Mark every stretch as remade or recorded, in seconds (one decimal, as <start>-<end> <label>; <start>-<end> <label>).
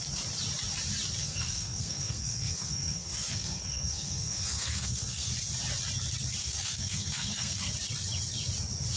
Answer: 0.0-1.2 recorded; 1.2-5.3 remade; 5.3-6.4 recorded; 6.4-7.7 remade; 7.7-9.0 recorded